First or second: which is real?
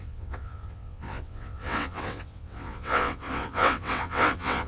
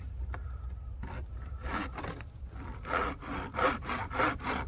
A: second